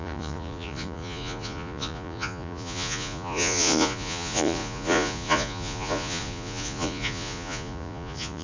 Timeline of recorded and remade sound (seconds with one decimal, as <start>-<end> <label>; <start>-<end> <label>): 0.0-8.4 remade